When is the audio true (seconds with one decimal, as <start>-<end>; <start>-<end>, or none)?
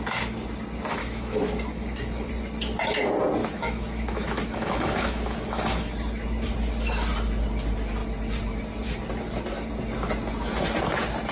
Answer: 0.0-1.0; 2.3-3.4; 5.9-11.3